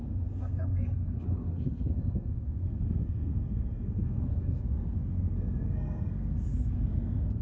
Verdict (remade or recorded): remade